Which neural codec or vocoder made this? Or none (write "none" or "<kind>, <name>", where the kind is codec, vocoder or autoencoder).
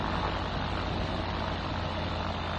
none